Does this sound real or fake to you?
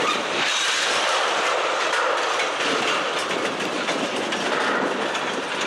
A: fake